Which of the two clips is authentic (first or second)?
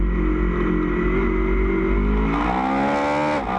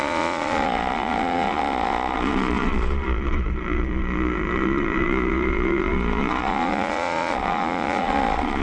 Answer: first